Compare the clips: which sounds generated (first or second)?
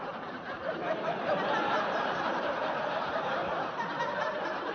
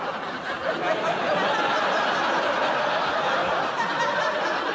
first